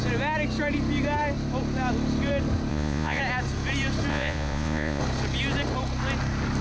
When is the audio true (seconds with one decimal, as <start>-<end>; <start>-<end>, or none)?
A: 0.0-2.7; 3.2-4.1; 5.0-6.6